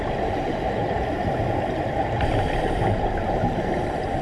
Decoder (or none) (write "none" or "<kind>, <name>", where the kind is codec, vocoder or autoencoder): vocoder, BigVGAN v2